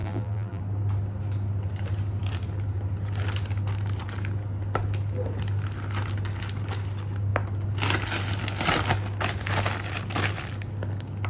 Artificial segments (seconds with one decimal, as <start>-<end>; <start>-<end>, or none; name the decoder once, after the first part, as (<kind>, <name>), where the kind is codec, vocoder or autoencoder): 0.0-0.6 (vocoder, BigVGAN v2)